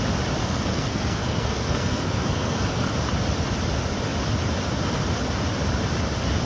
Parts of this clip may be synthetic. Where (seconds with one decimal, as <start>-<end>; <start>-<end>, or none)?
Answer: 0.4-2.9